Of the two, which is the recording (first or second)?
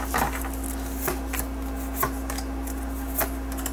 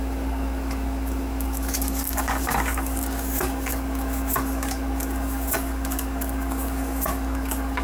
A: first